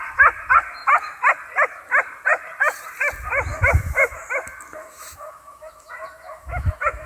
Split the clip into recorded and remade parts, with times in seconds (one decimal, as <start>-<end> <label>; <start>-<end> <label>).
0.0-3.5 recorded; 3.5-4.3 remade; 4.3-4.8 recorded; 4.8-7.1 remade